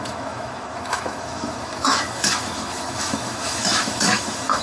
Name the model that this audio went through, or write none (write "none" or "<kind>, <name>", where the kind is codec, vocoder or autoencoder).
autoencoder, DAC-VAE